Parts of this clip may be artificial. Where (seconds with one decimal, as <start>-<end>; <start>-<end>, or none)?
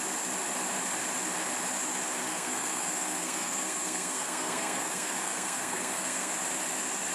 2.3-6.3